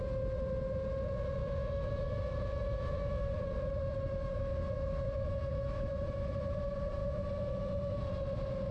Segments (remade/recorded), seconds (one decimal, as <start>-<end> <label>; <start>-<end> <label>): 0.0-1.4 recorded; 1.4-6.2 remade; 6.2-7.0 recorded; 7.0-8.0 remade; 8.0-8.7 recorded